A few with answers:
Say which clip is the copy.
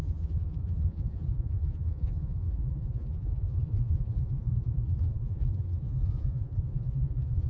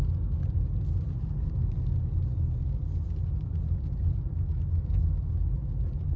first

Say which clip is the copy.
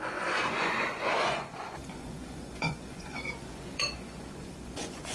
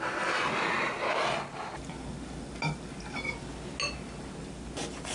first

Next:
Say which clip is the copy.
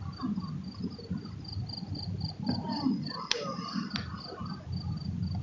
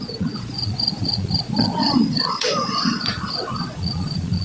second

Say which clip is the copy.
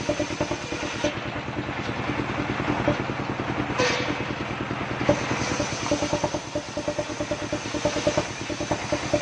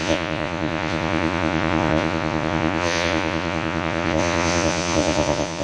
second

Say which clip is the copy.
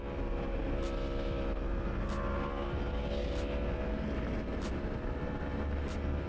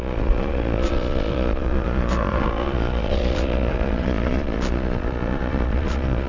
second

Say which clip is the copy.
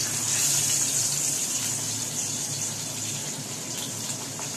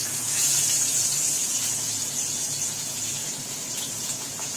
second